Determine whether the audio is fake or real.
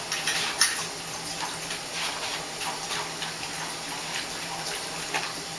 real